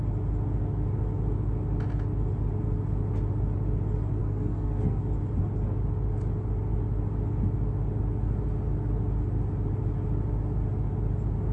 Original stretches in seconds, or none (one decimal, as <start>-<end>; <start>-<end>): 0.0-4.2; 5.0-11.5

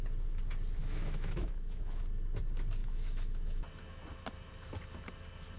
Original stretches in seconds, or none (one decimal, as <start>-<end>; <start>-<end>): 0.0-0.8; 2.0-2.8; 3.6-5.6

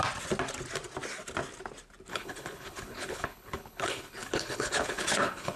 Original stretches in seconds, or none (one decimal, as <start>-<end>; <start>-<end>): 0.0-2.1

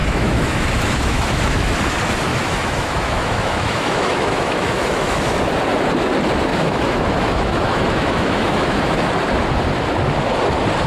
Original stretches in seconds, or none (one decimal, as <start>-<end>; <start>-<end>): 1.8-2.3; 5.4-6.5; 9.1-10.9

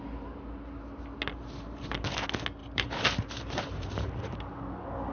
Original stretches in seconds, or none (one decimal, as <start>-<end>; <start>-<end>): 0.0-2.6; 4.1-5.1

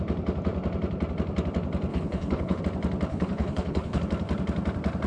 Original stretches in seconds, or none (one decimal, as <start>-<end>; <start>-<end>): 0.0-1.9; 2.6-3.1; 4.0-5.1

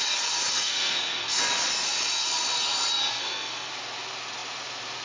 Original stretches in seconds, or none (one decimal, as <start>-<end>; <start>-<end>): 0.0-0.5; 1.4-3.1; 3.7-5.0

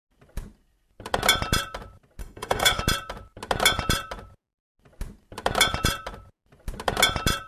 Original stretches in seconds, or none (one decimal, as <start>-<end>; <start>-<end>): 0.0-2.2; 2.8-7.5